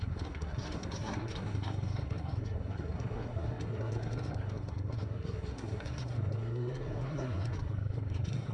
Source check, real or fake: fake